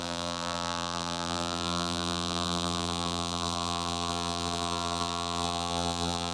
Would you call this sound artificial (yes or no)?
yes